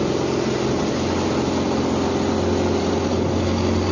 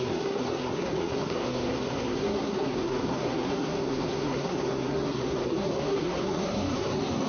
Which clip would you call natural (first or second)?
first